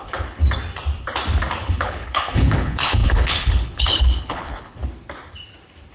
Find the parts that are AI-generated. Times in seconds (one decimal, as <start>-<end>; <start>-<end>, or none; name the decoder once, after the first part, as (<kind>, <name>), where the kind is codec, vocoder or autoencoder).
0.0-0.4 (codec, HILCodec); 1.6-4.8